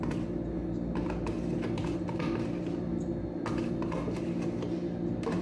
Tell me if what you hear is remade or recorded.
recorded